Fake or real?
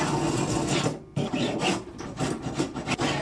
real